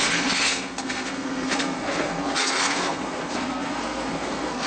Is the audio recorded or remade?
remade